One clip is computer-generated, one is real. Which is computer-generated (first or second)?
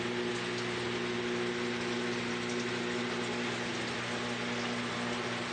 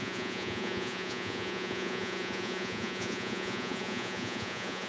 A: second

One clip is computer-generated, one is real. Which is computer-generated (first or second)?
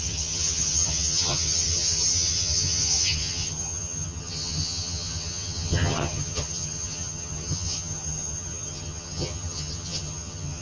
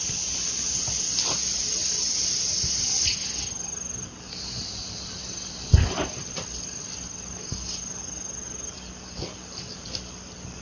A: first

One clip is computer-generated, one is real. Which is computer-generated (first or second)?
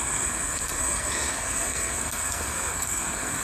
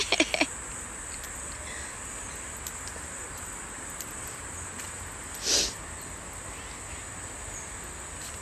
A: first